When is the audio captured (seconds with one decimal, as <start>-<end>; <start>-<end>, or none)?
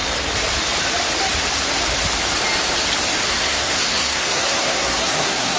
0.0-3.3